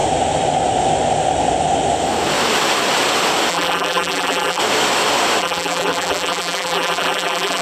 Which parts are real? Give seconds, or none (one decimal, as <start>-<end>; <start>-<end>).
0.0-3.5; 4.6-5.4